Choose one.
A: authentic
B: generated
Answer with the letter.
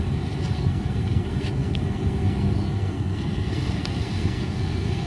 B